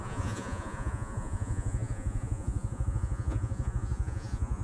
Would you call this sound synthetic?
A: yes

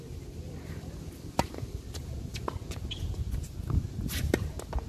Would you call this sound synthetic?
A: no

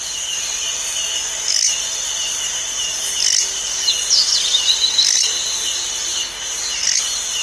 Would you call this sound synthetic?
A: no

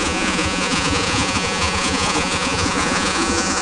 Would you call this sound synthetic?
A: yes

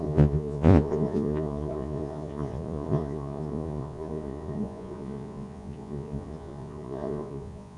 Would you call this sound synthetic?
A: yes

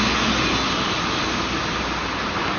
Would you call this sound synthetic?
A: no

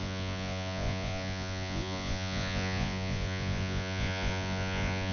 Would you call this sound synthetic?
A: yes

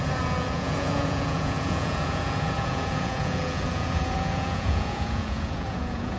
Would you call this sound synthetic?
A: yes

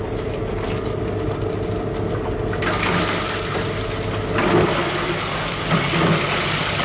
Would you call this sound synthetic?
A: no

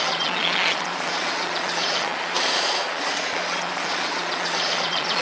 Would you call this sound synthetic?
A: yes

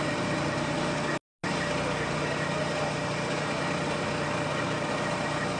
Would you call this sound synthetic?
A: no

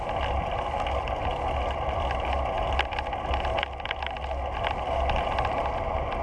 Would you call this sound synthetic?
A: no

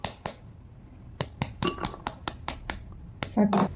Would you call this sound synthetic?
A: no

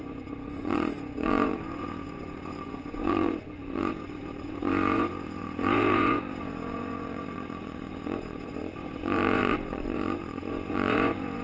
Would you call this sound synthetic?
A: yes